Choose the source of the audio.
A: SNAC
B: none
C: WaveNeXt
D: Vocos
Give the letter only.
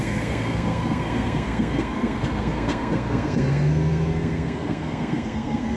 A